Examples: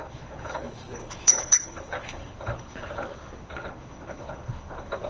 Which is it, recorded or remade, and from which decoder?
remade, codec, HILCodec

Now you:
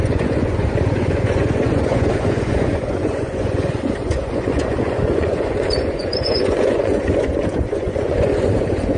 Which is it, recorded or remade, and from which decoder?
remade, vocoder, Vocos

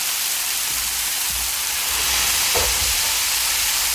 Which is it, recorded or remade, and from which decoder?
recorded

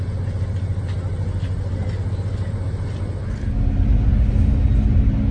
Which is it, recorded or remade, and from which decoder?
recorded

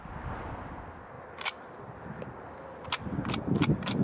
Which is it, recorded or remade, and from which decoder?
recorded